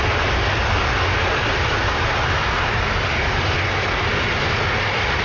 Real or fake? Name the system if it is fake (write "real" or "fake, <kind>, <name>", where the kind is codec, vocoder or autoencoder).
real